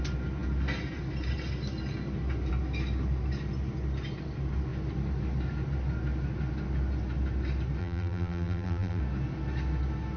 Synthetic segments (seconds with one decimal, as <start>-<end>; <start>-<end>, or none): 7.8-9.0